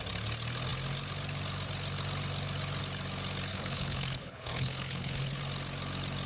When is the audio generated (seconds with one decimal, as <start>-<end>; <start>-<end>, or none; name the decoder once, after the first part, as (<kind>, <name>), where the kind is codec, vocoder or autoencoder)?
3.5-5.4 (codec, HILCodec)